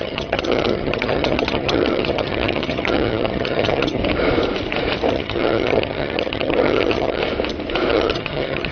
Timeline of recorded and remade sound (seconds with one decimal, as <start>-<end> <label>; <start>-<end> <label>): 0.0-4.0 remade; 4.0-5.1 recorded; 5.1-7.2 remade; 7.2-7.9 recorded; 7.9-8.7 remade